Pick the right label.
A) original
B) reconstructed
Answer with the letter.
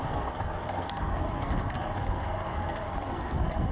B